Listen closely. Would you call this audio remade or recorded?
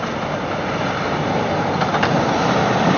remade